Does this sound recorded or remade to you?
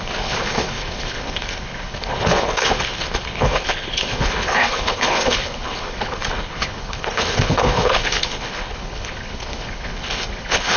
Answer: remade